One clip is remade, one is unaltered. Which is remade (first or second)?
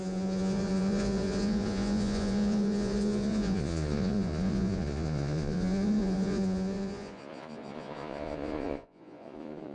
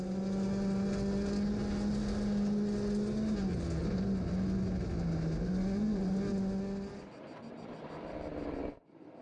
first